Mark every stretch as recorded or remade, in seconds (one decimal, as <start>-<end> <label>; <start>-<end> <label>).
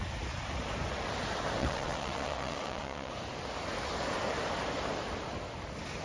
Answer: 0.0-1.6 recorded; 1.6-3.1 remade; 3.1-6.0 recorded